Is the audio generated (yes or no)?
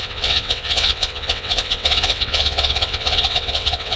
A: yes